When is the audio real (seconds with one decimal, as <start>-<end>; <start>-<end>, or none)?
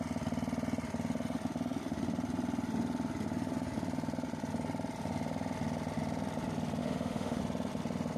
0.0-6.8; 7.4-8.2